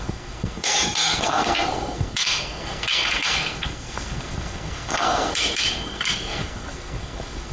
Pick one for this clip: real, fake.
fake